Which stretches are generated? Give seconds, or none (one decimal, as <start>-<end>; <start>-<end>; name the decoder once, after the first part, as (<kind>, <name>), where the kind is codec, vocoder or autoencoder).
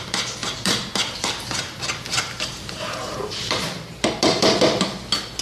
0.4-3.6 (vocoder, BigVGAN v2)